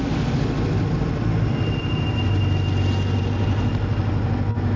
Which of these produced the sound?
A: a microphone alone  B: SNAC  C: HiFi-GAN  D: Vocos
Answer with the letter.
A